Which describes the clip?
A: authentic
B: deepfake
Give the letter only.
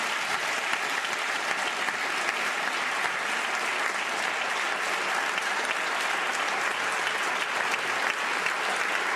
A